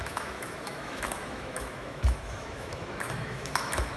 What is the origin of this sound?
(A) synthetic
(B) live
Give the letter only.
A